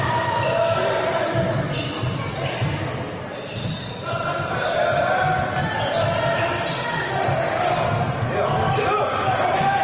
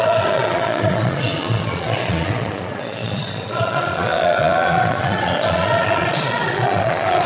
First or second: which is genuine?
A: first